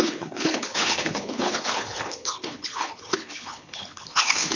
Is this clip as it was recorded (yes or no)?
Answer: no